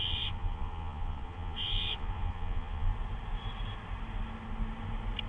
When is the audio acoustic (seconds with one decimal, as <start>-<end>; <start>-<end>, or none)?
2.9-5.3

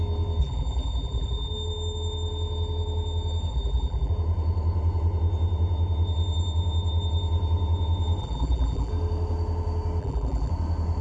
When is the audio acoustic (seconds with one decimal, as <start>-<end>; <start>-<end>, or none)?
0.0-0.4; 1.5-3.5; 4.1-8.2; 8.9-10.0; 10.5-11.0

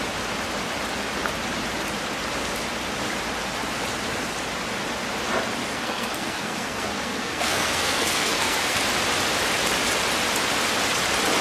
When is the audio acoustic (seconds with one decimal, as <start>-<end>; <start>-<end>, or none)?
0.0-5.6; 8.8-11.4

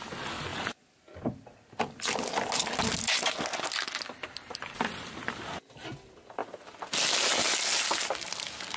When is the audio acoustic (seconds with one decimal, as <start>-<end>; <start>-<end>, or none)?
0.0-8.8

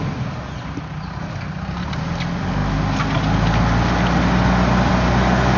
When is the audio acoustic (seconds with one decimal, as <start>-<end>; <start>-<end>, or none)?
0.0-5.6

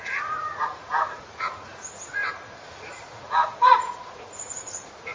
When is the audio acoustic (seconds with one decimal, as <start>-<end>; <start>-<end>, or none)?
none

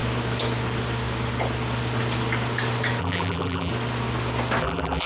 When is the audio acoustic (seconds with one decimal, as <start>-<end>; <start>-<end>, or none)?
0.0-3.0; 3.7-4.6

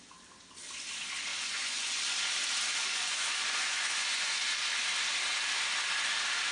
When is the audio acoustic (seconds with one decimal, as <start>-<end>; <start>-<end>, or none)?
0.0-1.3; 2.0-2.8; 4.7-6.5